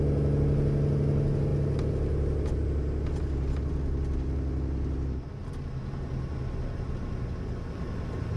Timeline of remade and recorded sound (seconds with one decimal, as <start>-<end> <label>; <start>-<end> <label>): 0.0-8.4 recorded

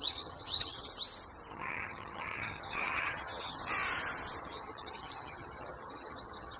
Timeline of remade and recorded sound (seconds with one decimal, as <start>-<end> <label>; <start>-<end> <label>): 0.0-0.9 remade; 0.9-1.5 recorded; 1.5-3.6 remade; 3.6-4.4 recorded; 4.4-6.6 remade

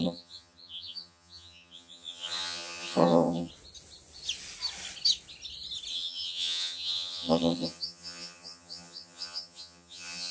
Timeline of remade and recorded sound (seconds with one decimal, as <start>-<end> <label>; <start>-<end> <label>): 0.0-3.5 remade; 3.5-5.9 recorded; 5.9-10.3 remade